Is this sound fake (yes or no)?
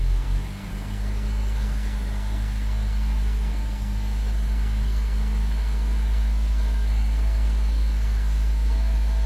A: yes